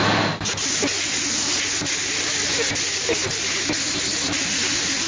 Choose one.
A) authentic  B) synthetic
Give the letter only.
A